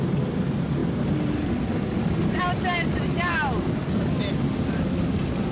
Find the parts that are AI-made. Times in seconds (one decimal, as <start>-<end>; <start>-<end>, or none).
none